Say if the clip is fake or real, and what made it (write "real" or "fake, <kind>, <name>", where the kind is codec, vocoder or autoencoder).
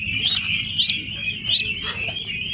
real